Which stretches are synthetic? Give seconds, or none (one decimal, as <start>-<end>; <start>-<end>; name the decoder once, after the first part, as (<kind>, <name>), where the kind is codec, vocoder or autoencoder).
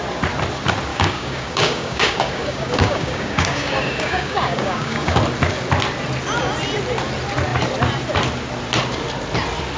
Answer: 0.9-5.2 (codec, DAC)